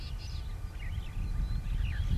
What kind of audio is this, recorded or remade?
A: recorded